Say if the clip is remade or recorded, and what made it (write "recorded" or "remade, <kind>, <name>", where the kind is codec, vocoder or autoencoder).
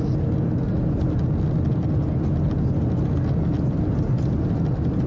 recorded